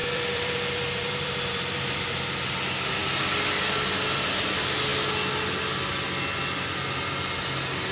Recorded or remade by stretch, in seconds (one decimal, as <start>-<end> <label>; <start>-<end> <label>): 0.0-2.1 remade; 2.1-7.9 recorded